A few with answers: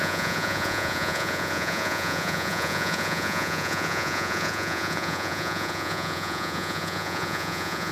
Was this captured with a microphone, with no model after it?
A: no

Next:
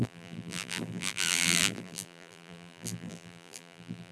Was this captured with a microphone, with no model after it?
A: no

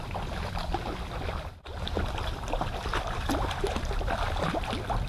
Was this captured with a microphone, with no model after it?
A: no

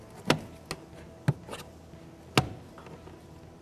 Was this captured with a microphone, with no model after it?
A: yes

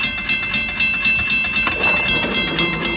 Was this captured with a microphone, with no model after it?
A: yes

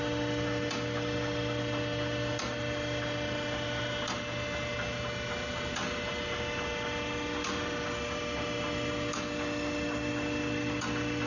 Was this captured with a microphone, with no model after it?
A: yes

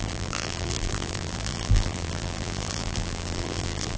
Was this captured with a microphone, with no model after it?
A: no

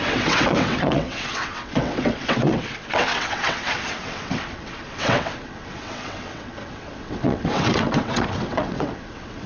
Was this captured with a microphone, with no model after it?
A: no